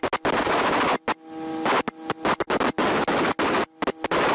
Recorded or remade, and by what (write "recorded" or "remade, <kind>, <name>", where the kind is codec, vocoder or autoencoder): recorded